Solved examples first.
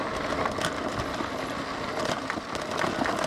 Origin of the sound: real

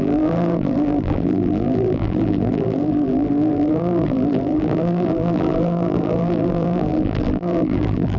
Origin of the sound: fake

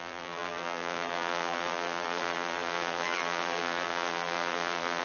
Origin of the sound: fake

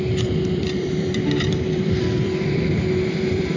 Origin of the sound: fake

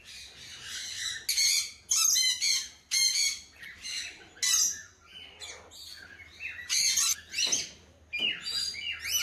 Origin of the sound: real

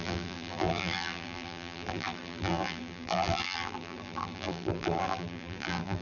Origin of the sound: fake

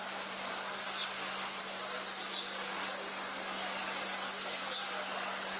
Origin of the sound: real